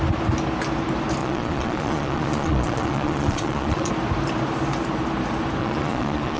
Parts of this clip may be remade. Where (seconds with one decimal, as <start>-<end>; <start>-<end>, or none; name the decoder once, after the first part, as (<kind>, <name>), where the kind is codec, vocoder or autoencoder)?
1.2-3.9 (vocoder, Vocos); 5.6-6.4